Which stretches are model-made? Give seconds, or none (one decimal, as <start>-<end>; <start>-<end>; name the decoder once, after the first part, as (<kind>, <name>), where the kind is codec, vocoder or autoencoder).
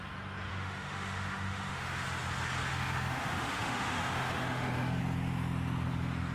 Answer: 0.5-2.0 (autoencoder, DAC-VAE); 2.7-5.0